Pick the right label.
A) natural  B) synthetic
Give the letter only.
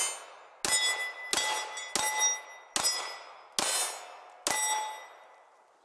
A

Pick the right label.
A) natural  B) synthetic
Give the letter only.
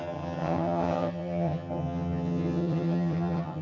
B